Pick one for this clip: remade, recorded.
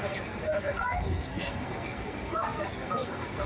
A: remade